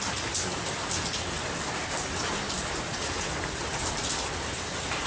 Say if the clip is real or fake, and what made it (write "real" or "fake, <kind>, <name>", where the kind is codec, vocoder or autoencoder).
real